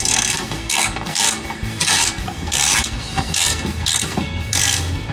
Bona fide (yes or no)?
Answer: no